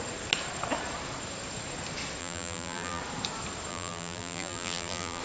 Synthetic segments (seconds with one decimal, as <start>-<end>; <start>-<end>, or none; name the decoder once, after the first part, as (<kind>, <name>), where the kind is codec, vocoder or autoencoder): 2.2-3.0 (vocoder, BigVGAN v2); 3.7-5.2